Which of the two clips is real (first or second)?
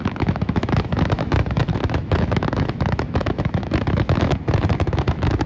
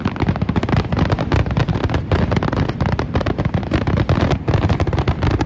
second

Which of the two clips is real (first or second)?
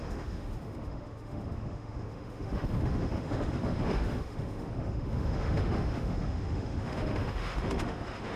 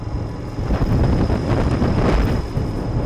second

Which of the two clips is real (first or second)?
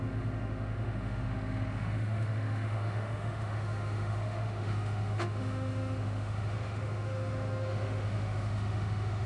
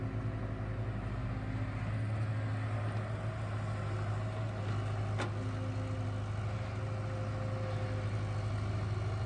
second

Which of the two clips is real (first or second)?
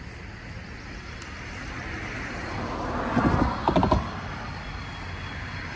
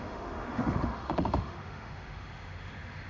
first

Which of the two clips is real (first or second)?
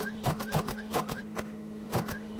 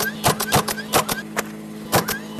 second